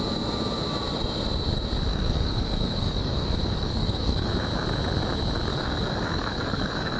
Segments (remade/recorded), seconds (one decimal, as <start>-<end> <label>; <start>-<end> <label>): 0.0-1.9 recorded; 1.9-4.3 remade; 4.3-5.5 recorded; 5.5-7.0 remade